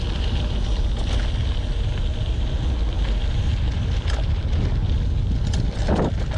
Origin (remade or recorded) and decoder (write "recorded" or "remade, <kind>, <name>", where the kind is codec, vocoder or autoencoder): recorded